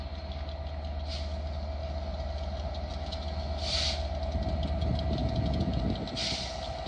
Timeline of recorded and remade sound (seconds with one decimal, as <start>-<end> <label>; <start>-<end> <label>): 0.0-5.2 recorded; 5.2-5.8 remade; 5.8-6.9 recorded

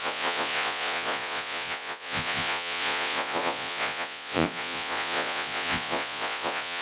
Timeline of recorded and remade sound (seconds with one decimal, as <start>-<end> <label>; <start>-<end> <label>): 0.0-6.8 remade

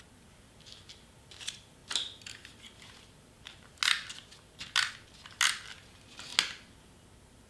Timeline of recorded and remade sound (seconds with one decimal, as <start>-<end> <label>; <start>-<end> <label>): 0.0-7.5 recorded

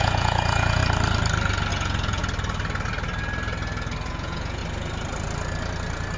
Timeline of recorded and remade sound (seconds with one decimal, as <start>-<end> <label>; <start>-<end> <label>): 0.0-0.8 remade; 0.8-1.7 recorded; 1.7-2.2 remade; 2.2-4.1 recorded; 4.1-4.6 remade; 4.6-6.2 recorded

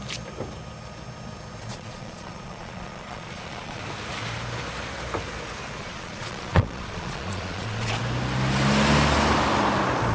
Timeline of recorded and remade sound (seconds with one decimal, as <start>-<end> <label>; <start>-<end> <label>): 0.0-1.7 recorded; 1.7-3.8 remade; 3.8-5.8 recorded; 5.8-8.0 remade; 8.0-10.1 recorded

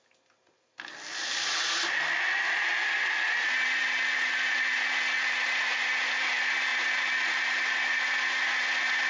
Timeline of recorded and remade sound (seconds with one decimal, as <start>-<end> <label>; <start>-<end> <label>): 0.0-9.1 recorded

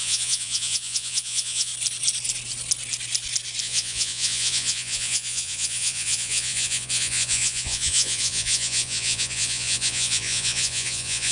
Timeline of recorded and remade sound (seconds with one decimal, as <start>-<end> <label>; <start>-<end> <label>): 0.0-1.7 remade; 1.7-3.6 recorded; 3.6-11.3 remade